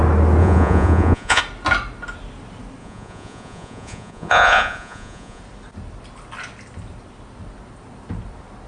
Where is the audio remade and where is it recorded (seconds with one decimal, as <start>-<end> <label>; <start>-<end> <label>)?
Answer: 0.0-0.4 recorded; 0.4-1.4 remade; 1.4-2.8 recorded; 2.8-5.4 remade; 5.4-8.7 recorded